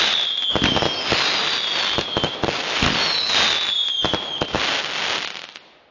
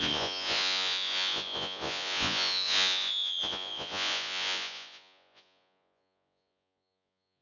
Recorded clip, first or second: first